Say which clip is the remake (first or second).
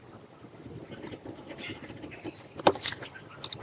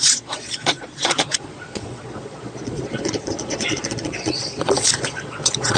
second